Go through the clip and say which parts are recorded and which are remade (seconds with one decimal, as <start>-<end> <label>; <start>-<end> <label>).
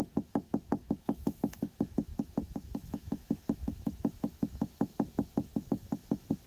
0.0-6.5 remade